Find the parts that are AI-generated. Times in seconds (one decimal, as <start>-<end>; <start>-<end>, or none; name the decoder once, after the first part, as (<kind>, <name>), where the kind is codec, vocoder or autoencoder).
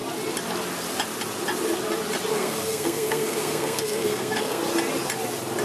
2.3-4.6 (codec, SNAC)